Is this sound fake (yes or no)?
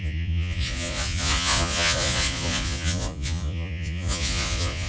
yes